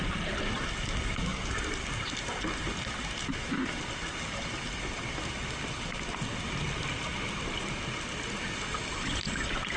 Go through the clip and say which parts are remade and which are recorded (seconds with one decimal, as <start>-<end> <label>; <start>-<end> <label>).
0.0-9.8 recorded